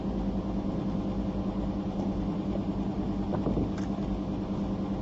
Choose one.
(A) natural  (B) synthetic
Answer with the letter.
A